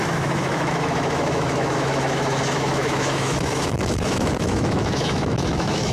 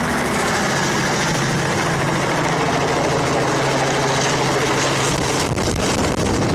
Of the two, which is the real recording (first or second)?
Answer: second